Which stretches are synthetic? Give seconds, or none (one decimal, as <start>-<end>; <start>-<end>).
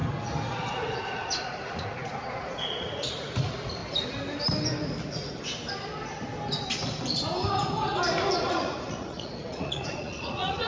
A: 0.7-3.8; 8.5-10.7